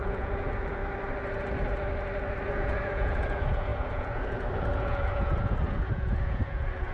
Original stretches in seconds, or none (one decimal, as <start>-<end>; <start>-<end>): 0.8-2.5